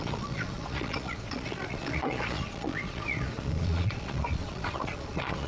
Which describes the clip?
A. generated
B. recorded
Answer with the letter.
A